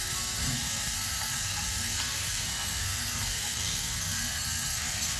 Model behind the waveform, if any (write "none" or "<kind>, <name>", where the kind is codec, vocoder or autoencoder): codec, SNAC